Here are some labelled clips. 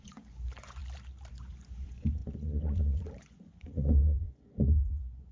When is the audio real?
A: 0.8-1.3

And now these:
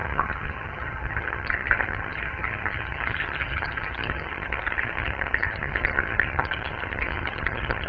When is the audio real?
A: none

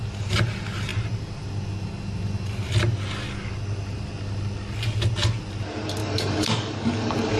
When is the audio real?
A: 0.0-6.0

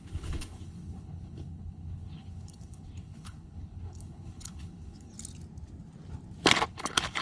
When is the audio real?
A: 5.1-6.7

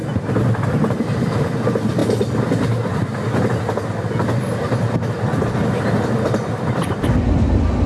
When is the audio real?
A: 0.0-7.9

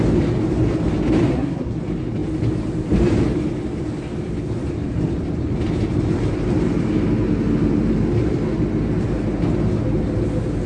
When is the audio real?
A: 0.0-1.3; 1.8-10.7

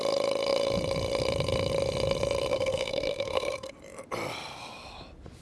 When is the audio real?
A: 0.0-2.5; 3.7-5.4